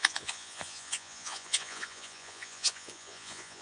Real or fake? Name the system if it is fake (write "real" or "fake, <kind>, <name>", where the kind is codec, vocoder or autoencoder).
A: fake, vocoder, Vocos